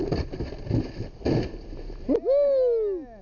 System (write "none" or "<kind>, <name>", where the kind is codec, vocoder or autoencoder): none